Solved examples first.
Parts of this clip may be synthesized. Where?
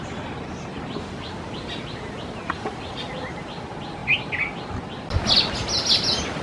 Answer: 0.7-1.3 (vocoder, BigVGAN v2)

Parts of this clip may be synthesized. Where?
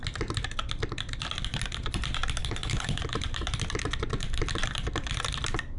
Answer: 2.4-3.0 (codec, HILCodec)